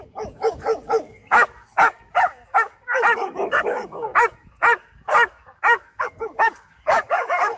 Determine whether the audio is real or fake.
fake